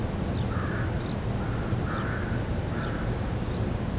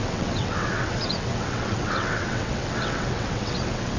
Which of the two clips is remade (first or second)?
second